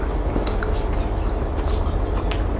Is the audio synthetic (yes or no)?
no